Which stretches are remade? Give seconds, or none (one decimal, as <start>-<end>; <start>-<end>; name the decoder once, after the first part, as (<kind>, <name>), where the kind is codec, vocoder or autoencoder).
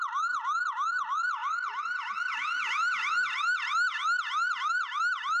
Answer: none